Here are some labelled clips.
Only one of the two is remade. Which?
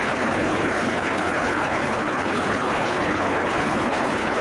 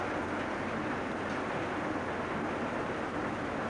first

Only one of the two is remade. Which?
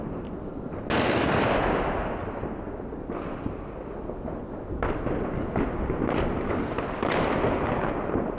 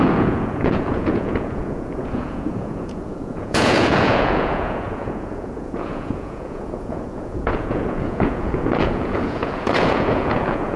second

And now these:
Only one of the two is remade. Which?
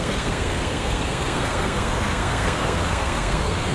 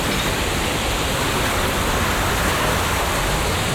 first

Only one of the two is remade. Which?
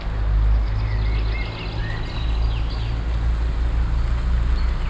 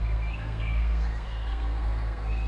second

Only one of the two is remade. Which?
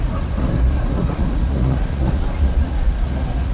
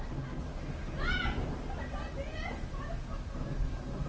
first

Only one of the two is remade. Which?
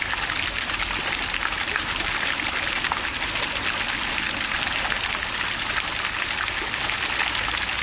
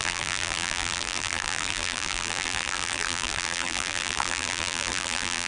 second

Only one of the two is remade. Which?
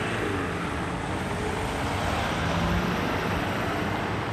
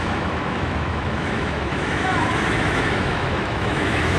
second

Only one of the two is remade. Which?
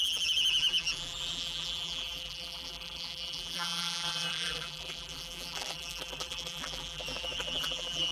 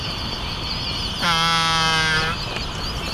first